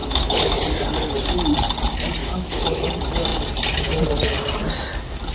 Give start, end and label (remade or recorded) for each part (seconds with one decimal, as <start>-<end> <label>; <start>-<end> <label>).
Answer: 0.0-0.6 remade; 0.6-2.2 recorded; 2.2-2.9 remade; 2.9-5.3 recorded